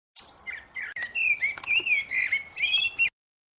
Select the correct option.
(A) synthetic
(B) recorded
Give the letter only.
B